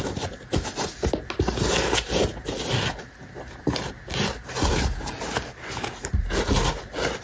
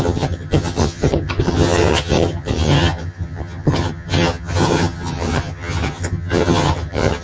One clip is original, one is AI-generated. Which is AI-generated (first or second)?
second